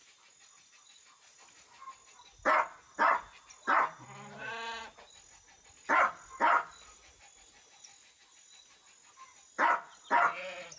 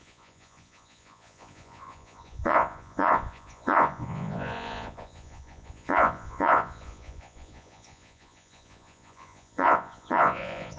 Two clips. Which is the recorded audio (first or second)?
first